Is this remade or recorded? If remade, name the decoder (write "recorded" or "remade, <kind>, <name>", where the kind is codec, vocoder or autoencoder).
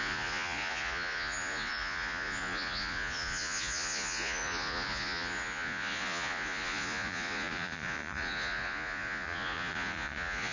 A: remade, vocoder, Vocos